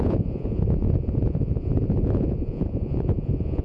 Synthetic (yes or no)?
yes